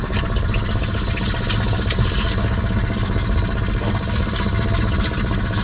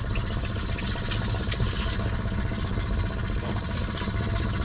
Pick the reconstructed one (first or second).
second